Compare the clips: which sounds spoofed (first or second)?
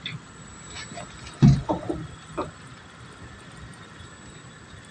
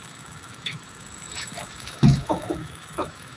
second